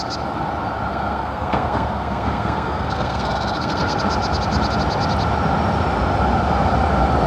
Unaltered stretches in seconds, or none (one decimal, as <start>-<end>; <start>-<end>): 0.0-0.9; 4.0-7.3

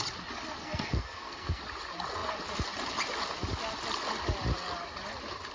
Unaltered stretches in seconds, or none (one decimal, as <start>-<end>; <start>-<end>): 0.0-0.6; 1.6-5.5

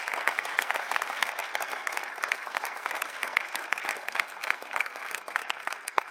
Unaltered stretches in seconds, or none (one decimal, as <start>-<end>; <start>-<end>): none

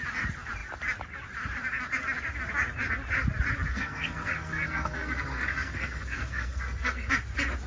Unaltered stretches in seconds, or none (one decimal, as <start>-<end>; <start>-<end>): 0.0-3.7; 7.1-7.7

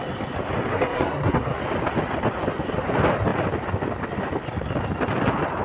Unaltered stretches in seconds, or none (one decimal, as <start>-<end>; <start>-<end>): 0.0-0.7; 1.6-5.6